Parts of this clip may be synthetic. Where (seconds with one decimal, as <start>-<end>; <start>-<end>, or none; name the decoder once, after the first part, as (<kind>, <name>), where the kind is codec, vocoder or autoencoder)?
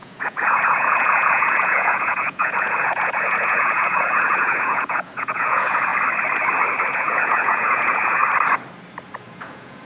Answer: 0.0-5.9 (vocoder, Vocos); 6.9-8.2; 9.3-9.8